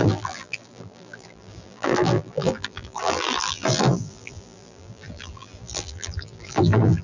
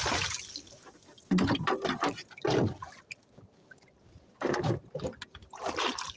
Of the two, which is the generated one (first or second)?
first